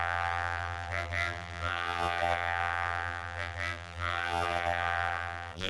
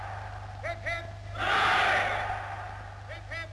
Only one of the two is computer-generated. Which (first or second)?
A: first